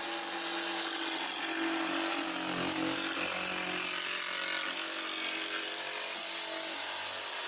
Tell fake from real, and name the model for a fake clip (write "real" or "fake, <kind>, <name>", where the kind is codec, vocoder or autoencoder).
real